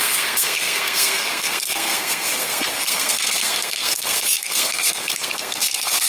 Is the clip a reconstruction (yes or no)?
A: yes